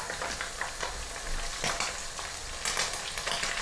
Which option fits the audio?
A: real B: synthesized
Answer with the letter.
A